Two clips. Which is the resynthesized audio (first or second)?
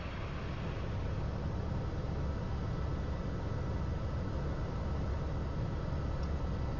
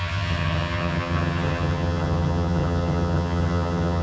second